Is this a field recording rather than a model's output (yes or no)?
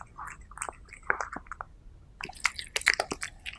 yes